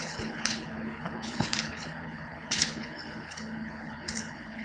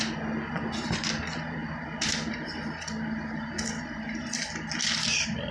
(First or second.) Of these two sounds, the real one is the second